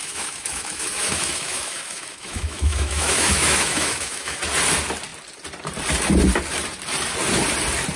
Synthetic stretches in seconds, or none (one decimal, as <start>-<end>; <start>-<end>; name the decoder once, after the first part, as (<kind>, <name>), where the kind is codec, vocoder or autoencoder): 0.0-4.4 (autoencoder, DAC-VAE)